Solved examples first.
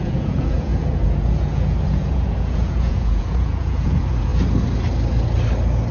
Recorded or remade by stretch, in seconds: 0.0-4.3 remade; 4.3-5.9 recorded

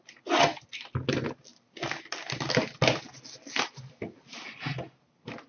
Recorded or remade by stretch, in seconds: 0.0-5.5 recorded

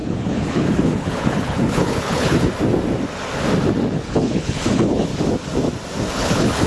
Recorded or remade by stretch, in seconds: 0.0-2.5 remade; 2.5-3.9 recorded; 3.9-5.1 remade; 5.1-6.1 recorded; 6.1-6.7 remade

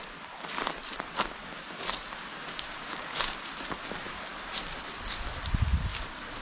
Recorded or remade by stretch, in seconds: 0.0-2.3 recorded; 2.3-3.4 remade; 3.4-6.4 recorded

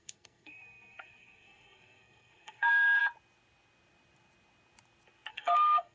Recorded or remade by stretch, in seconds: 0.0-3.0 remade; 3.0-5.3 recorded; 5.3-5.9 remade

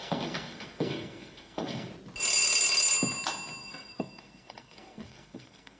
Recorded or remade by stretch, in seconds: 0.0-1.9 remade; 1.9-3.6 recorded; 3.6-5.8 remade

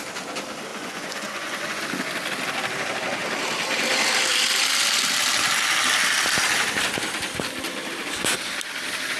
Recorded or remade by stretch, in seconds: 0.0-0.7 recorded; 0.7-1.8 remade; 1.8-9.2 recorded